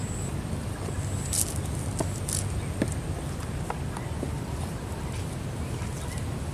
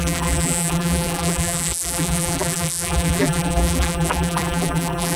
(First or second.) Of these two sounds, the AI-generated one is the second